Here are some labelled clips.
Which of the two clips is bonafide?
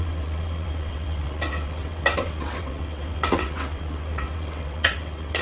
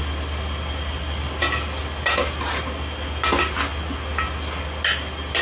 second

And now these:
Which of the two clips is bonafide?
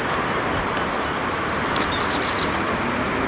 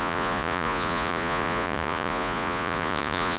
first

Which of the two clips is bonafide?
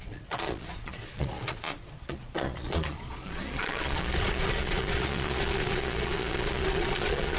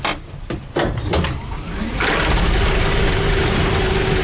second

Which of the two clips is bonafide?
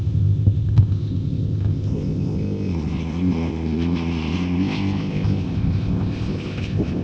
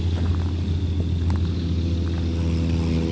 second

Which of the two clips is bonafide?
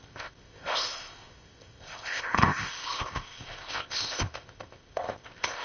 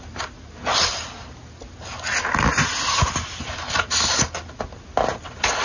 second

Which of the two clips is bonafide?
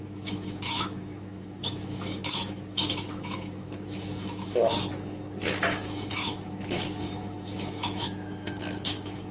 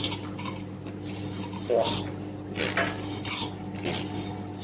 second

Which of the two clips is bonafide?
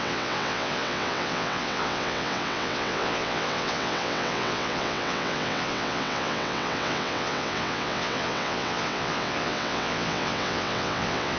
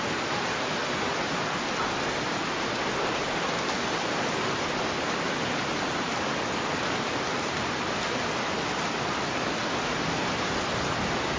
second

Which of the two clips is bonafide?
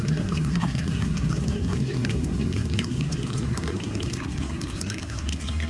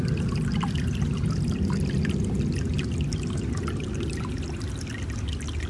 second